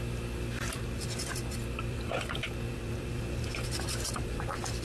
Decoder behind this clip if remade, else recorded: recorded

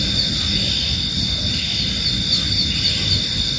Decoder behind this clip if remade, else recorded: recorded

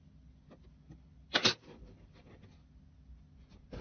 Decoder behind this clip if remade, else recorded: recorded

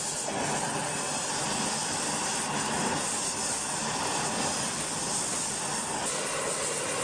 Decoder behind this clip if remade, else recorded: recorded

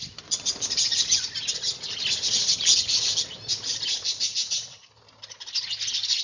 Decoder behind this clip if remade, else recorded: recorded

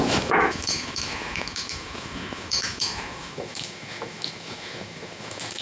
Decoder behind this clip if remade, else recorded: remade, autoencoder, DAC-VAE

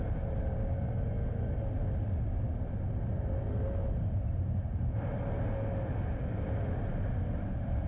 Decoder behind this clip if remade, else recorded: recorded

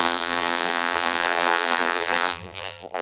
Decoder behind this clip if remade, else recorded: remade, vocoder, BigVGAN v2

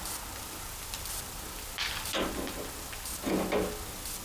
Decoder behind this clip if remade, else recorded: recorded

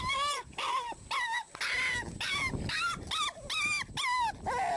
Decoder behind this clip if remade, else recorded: recorded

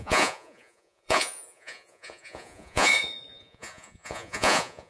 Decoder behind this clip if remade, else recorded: remade, vocoder, Vocos